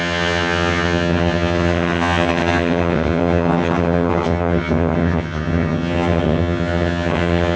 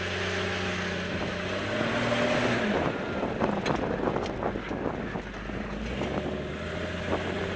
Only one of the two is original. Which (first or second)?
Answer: second